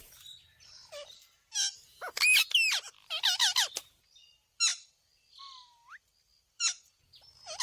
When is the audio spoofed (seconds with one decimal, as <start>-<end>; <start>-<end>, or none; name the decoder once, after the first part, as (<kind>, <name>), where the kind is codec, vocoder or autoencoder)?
0.5-1.5 (vocoder, BigVGAN v2)